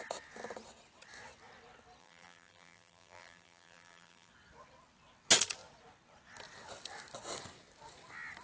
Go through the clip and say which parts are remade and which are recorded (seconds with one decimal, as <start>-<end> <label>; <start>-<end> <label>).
0.0-2.0 recorded; 2.0-4.3 remade; 4.3-8.4 recorded